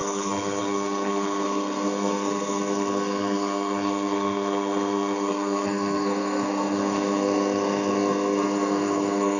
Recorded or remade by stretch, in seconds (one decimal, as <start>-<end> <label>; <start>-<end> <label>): 0.0-9.4 remade